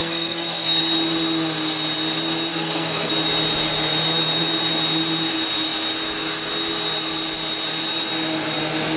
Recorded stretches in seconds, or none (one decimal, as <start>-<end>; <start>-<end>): 0.8-2.5; 3.1-9.0